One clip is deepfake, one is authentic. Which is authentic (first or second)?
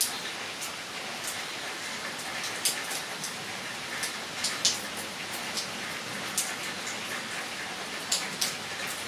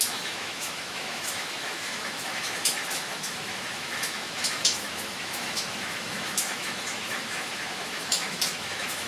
first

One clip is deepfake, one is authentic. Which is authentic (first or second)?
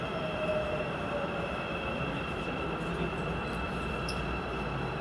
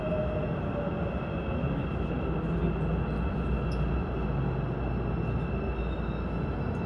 second